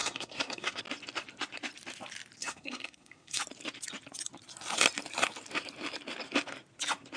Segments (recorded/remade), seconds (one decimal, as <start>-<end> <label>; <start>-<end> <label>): 0.0-0.8 remade; 0.8-2.4 recorded; 2.4-3.4 remade; 3.4-7.2 recorded

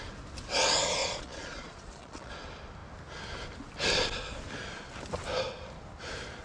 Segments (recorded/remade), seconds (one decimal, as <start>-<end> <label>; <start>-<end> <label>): 0.0-1.0 recorded; 1.0-2.3 remade; 2.3-6.4 recorded

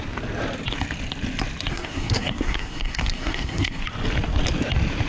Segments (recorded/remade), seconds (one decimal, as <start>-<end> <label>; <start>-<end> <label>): 0.0-1.7 recorded; 1.7-3.8 remade; 3.8-5.1 recorded

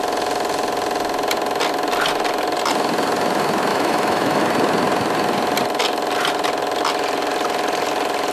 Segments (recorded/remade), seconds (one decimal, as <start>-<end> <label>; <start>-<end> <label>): 0.0-3.7 recorded; 3.7-4.4 remade; 4.4-8.3 recorded

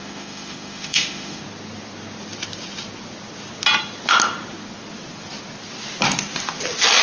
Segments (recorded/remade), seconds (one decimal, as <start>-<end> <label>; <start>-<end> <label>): 0.0-1.4 remade; 1.4-7.0 recorded